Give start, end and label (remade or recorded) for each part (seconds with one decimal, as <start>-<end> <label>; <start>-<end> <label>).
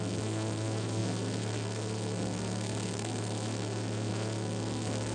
0.0-5.1 remade